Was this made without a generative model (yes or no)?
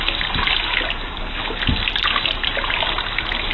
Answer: yes